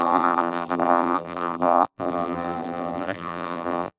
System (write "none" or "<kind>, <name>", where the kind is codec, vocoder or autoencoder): vocoder, BigVGAN v2